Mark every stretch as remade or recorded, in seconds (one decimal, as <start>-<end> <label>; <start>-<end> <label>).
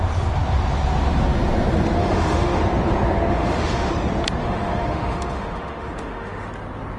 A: 0.0-2.0 recorded; 2.0-2.6 remade; 2.6-3.3 recorded; 3.3-3.9 remade; 3.9-4.4 recorded; 4.4-6.5 remade; 6.5-7.0 recorded